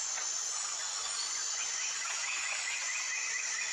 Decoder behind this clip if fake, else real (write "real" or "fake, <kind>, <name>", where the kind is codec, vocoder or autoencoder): fake, vocoder, Vocos